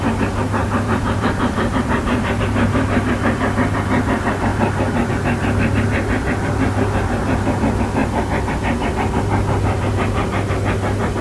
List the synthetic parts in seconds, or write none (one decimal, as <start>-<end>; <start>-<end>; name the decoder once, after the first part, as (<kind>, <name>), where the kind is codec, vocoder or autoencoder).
0.6-2.4 (vocoder, BigVGAN v2)

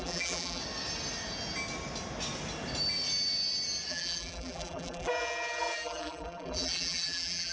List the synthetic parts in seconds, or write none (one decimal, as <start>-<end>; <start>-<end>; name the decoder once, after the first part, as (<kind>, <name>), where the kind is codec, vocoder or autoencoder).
0.0-0.6 (vocoder, BigVGAN v2); 3.9-7.5

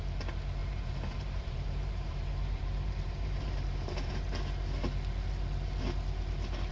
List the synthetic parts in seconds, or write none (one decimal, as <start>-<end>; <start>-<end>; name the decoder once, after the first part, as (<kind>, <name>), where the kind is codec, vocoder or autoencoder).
0.6-4.1 (vocoder, BigVGAN v2)

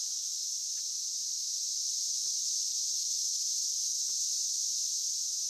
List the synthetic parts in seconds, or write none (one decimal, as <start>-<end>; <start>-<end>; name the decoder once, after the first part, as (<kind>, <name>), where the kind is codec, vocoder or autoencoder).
0.4-3.7 (vocoder, BigVGAN v2); 4.2-5.5

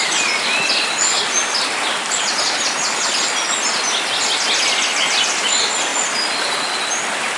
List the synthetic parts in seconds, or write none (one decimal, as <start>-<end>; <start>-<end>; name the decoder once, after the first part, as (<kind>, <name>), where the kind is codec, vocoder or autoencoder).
none